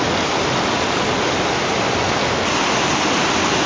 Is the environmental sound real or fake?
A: real